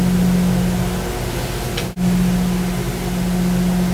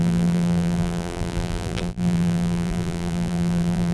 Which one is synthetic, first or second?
second